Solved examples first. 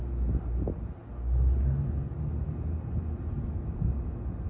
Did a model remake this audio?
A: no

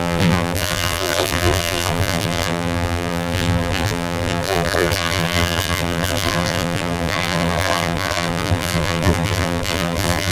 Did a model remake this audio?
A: yes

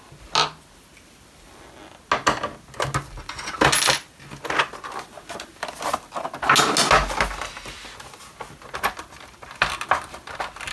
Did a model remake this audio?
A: no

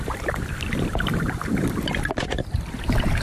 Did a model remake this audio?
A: yes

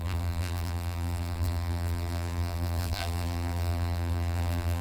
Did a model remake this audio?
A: yes